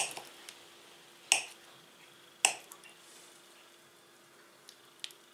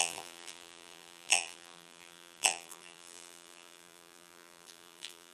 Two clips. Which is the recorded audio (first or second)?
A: first